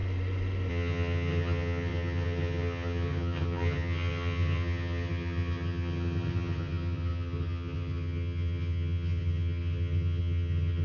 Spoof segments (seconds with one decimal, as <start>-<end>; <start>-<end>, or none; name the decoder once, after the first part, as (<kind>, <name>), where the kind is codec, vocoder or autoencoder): 0.7-10.8 (vocoder, HiFi-GAN)